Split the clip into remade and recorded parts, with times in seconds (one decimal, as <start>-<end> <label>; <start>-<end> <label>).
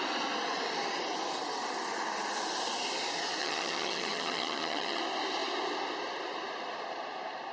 0.0-3.4 recorded; 3.4-5.0 remade; 5.0-7.5 recorded